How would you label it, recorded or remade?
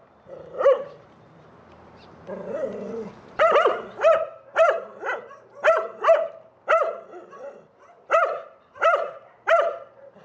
remade